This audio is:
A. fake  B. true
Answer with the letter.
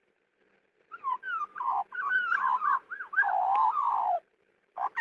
A